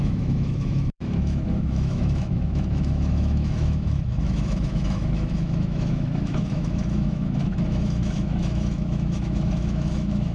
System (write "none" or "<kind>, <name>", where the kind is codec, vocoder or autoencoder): autoencoder, DAC-VAE